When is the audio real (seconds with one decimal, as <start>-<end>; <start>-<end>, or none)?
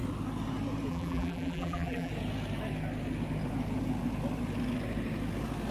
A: 0.0-0.9; 2.1-5.7